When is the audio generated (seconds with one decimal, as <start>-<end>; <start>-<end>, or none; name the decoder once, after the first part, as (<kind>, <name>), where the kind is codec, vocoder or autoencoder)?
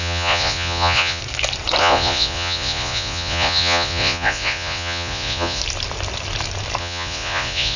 0.0-1.2 (vocoder, Vocos); 1.8-5.6; 6.8-7.8